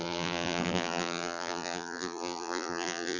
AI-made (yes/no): yes